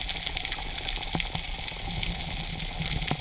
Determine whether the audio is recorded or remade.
recorded